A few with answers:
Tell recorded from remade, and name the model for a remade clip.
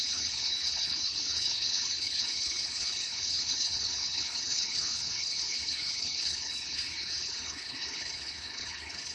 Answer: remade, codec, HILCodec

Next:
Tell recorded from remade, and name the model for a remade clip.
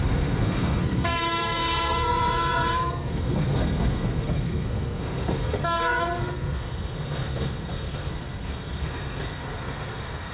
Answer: remade, codec, SNAC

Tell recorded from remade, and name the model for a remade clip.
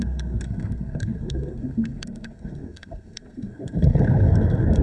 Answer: remade, codec, SNAC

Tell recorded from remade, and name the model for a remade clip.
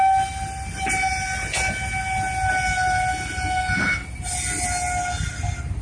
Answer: recorded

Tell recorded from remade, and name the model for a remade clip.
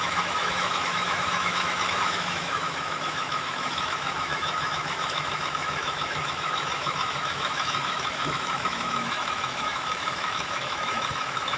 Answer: remade, autoencoder, DAC-VAE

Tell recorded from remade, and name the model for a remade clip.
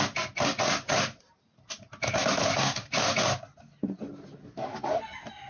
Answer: recorded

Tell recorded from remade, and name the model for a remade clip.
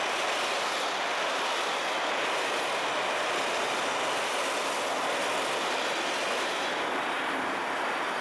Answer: recorded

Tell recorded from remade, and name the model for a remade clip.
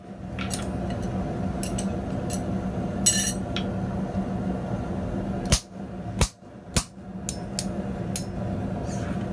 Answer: recorded